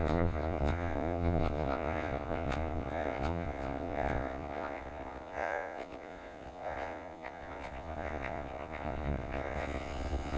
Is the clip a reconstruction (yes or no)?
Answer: yes